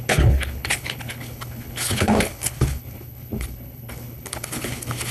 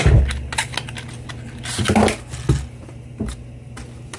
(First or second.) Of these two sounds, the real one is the second